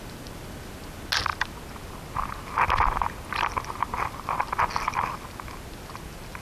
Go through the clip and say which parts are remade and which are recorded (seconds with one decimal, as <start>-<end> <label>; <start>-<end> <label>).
0.0-6.4 recorded